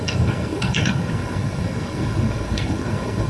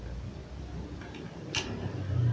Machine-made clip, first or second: first